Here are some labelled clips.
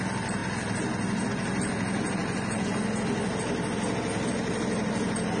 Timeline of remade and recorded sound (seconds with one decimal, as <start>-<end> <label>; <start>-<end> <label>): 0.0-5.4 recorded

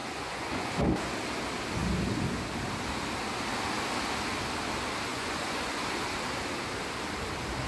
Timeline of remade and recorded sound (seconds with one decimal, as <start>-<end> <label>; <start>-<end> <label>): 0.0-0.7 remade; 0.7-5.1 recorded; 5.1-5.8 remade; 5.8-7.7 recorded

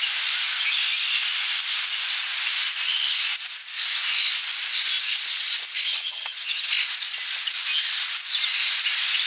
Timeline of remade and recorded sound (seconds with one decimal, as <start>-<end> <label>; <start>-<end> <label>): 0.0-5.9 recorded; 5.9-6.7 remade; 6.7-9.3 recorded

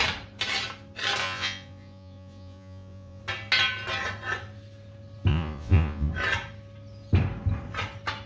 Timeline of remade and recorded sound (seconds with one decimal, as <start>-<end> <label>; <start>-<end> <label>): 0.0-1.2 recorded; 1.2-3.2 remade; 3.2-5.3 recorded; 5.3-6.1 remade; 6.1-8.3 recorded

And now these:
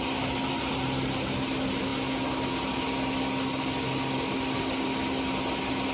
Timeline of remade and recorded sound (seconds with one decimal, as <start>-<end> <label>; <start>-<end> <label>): 0.0-5.9 recorded

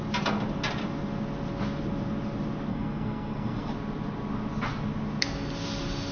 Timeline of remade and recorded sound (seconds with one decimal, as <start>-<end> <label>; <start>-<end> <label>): 0.0-2.7 recorded; 2.7-3.7 remade; 3.7-6.1 recorded

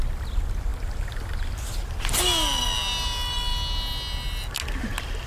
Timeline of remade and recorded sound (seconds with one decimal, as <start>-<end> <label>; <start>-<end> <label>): 0.0-5.3 recorded

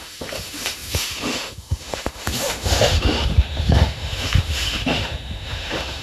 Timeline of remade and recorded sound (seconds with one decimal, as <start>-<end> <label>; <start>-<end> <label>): 0.0-6.0 remade